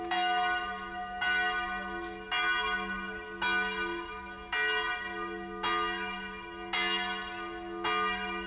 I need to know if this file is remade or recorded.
recorded